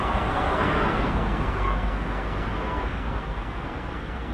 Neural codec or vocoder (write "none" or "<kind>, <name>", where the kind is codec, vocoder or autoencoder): codec, SNAC